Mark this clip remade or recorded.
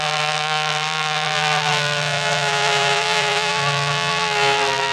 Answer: remade